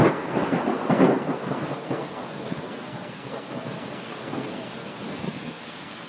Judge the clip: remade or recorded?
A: remade